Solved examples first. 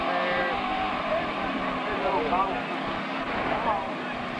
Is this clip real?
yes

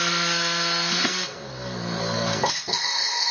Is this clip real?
no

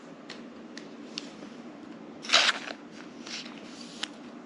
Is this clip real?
yes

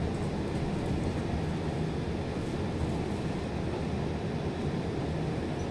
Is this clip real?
yes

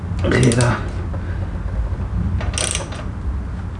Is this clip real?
yes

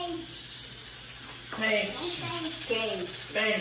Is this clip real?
yes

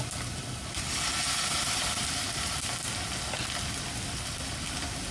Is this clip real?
yes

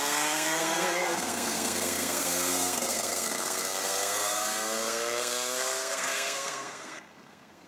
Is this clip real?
no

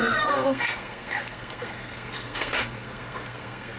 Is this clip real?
no